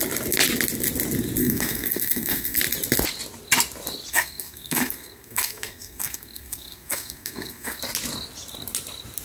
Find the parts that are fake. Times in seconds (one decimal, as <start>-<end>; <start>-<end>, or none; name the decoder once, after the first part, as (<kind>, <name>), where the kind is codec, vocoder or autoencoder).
1.4-2.6 (codec, SNAC); 4.1-7.8